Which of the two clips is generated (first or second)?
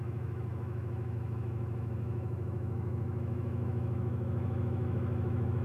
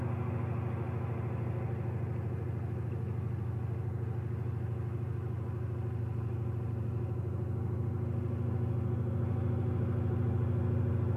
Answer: first